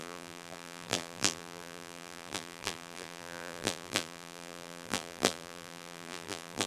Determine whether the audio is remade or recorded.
remade